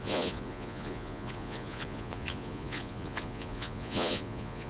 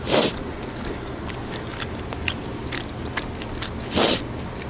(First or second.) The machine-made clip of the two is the first